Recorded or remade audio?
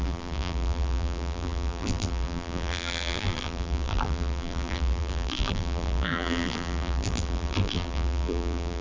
remade